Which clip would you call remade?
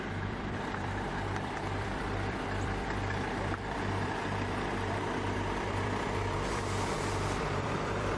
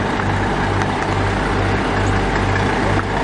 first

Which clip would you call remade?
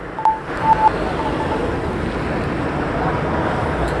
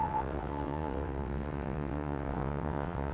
second